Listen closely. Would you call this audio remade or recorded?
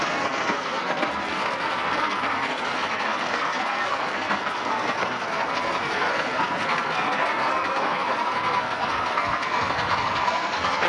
remade